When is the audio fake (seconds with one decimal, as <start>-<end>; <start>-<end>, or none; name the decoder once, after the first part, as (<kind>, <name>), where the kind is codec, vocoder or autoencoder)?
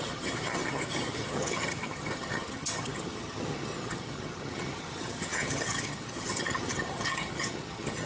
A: 0.0-8.1 (vocoder, HiFi-GAN)